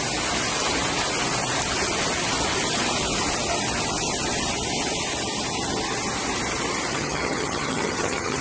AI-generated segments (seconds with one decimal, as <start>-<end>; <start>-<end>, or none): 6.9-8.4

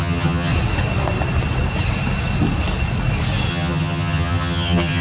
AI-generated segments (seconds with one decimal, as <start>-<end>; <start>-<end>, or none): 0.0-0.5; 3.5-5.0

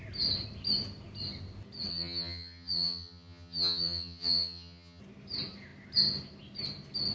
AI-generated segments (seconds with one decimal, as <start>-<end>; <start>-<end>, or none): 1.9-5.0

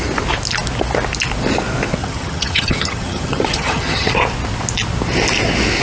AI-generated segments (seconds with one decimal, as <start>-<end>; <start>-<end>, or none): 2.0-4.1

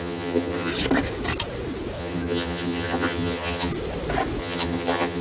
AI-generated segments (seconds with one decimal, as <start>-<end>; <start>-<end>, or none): 0.0-0.7; 2.0-3.7; 4.4-5.2

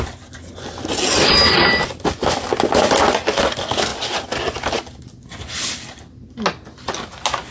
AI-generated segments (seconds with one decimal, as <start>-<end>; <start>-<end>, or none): none

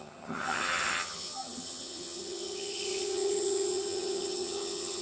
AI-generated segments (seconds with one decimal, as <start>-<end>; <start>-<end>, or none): 0.0-5.0

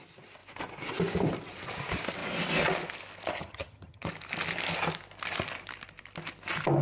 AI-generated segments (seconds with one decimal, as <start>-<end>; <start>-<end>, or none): 3.4-4.1